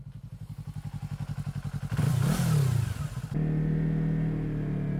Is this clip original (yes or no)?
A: yes